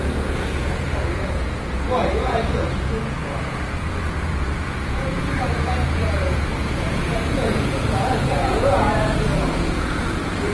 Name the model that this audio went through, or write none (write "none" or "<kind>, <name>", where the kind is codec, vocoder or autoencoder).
vocoder, Vocos